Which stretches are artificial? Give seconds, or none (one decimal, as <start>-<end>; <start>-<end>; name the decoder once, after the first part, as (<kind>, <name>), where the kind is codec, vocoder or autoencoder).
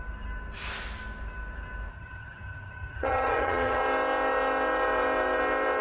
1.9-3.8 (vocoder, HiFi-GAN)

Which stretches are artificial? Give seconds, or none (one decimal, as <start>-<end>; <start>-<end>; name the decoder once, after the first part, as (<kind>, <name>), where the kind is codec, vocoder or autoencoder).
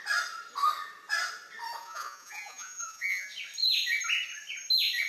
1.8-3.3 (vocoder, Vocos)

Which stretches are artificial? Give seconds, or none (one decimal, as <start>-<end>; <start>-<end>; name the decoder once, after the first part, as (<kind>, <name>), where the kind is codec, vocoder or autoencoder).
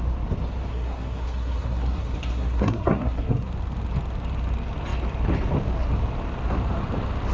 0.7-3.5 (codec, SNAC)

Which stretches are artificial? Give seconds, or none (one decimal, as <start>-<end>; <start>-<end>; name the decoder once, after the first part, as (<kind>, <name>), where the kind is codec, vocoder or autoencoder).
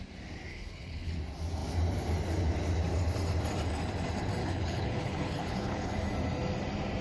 0.5-1.1 (codec, HILCodec); 4.4-5.9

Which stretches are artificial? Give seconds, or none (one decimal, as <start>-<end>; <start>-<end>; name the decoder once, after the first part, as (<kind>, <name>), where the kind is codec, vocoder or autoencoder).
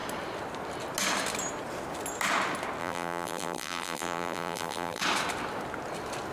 2.8-5.0 (vocoder, BigVGAN v2)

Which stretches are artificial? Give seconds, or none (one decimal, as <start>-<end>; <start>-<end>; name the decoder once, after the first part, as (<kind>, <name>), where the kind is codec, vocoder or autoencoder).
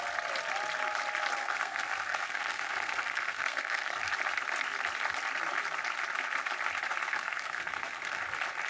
1.4-4.1 (codec, SNAC); 7.1-8.2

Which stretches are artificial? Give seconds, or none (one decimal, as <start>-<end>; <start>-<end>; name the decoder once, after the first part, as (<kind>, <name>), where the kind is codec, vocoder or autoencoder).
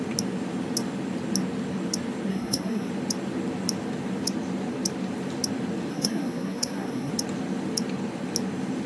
2.3-2.9 (codec, SNAC); 5.9-7.1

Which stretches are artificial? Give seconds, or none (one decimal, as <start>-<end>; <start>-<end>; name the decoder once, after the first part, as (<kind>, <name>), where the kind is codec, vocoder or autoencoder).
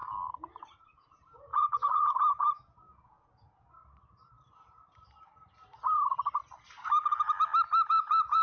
0.6-3.8 (vocoder, Vocos); 7.9-8.4